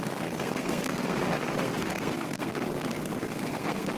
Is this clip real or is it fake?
fake